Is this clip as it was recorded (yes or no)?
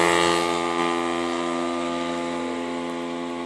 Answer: yes